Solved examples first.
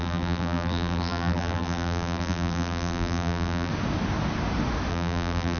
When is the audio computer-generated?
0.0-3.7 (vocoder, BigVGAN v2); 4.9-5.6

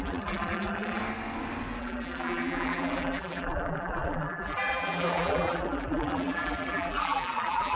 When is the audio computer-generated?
0.0-1.0 (vocoder, BigVGAN v2); 1.8-7.8

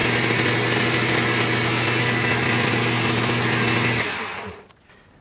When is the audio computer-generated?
none

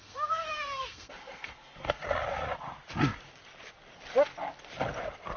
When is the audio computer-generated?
0.0-2.0 (codec, SNAC)